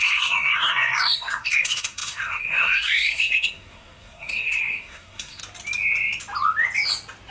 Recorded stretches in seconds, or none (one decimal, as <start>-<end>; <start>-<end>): 5.4-7.3